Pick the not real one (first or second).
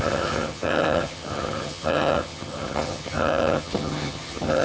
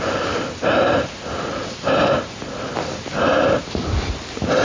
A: first